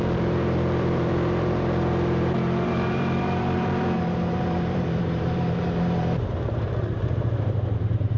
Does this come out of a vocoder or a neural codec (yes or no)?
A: yes